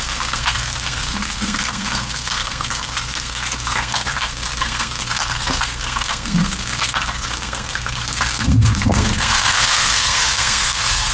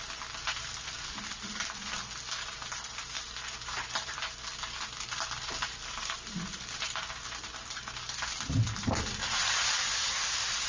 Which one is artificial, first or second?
first